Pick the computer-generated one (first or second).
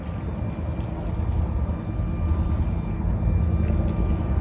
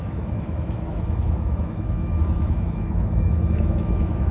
second